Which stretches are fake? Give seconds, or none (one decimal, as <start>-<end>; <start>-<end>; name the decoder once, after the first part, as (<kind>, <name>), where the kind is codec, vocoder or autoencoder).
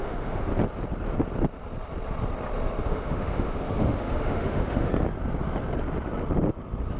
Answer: 0.0-0.5 (autoencoder, DAC-VAE); 2.8-4.9